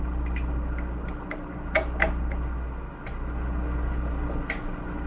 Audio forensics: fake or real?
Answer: real